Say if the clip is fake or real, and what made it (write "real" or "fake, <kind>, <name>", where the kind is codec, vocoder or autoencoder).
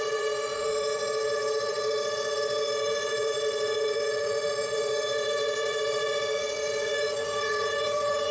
fake, vocoder, Vocos